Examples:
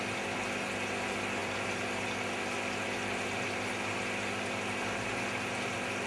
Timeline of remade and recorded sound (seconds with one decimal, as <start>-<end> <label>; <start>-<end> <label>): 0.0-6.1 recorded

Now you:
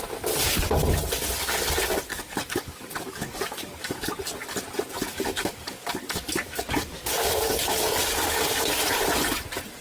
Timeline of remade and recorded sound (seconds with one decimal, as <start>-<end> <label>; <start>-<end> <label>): 0.0-2.1 recorded; 2.1-4.1 remade; 4.1-5.0 recorded; 5.0-8.6 remade; 8.6-9.8 recorded

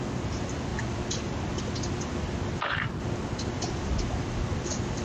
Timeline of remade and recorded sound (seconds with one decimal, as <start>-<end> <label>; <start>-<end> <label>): 0.0-5.0 recorded